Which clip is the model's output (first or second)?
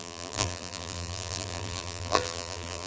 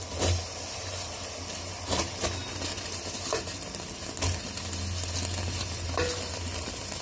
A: first